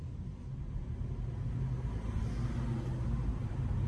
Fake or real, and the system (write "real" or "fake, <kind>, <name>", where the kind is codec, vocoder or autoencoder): real